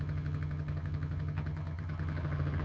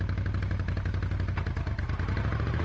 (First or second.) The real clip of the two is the second